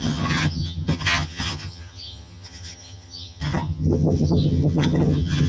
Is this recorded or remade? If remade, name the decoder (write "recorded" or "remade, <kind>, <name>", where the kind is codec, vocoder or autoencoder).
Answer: remade, vocoder, HiFi-GAN